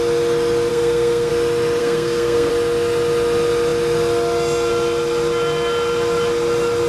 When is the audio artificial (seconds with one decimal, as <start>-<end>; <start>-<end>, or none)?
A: 0.7-1.3; 1.8-2.5